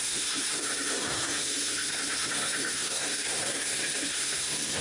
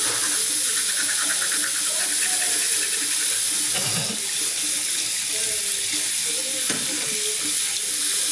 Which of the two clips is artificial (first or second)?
first